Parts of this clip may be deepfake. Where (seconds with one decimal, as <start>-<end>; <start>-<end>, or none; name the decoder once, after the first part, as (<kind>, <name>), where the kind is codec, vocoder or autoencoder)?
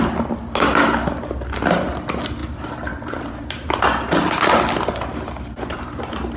2.4-3.8 (vocoder, BigVGAN v2)